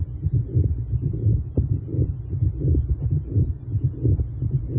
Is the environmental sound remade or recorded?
remade